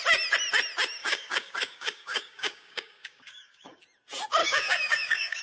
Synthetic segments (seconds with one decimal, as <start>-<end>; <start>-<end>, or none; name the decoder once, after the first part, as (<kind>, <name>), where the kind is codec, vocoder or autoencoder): 1.0-3.8 (codec, DAC); 4.4-5.4